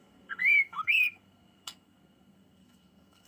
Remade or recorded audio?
remade